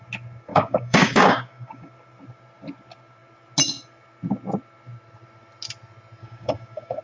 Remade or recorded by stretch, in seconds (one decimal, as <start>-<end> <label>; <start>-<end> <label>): 0.0-0.5 recorded; 0.5-1.9 remade; 1.9-6.2 recorded; 6.2-7.0 remade